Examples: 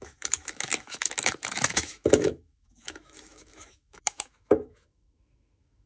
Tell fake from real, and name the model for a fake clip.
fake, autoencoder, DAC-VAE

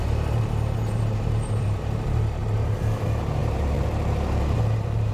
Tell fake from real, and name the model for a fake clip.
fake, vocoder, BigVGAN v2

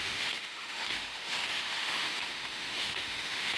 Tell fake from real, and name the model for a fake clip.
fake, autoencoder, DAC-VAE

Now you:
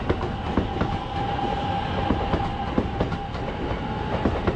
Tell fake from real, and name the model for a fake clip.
real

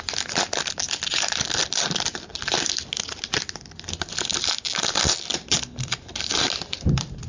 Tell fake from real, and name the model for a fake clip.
real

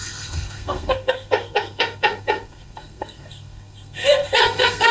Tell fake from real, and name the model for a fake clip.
fake, codec, SNAC